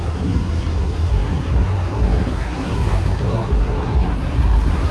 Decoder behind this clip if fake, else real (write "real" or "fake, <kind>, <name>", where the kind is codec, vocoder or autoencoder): fake, codec, SNAC